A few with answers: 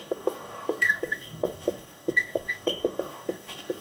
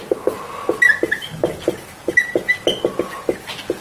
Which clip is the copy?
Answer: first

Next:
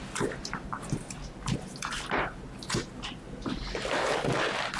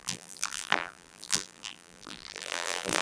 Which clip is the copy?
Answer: second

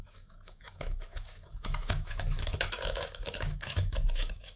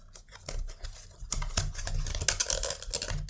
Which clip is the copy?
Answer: first